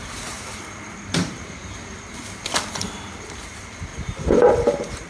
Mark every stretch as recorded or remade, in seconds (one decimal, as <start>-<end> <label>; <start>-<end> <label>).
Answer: 0.0-1.9 remade; 1.9-2.7 recorded; 2.7-5.1 remade